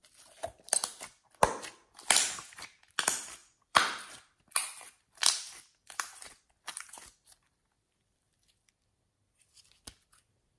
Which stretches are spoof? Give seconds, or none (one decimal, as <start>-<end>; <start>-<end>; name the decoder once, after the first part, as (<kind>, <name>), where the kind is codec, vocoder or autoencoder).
0.0-1.3 (vocoder, BigVGAN v2); 3.4-8.7